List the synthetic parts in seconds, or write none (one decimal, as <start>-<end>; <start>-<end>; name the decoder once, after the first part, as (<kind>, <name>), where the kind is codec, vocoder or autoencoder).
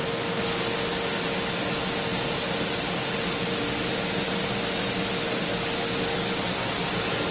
none